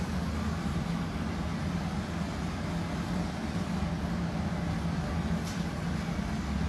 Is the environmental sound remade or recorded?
recorded